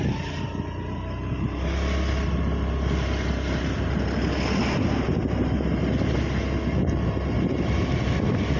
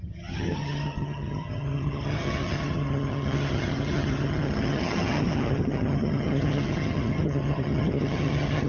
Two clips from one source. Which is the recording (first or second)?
first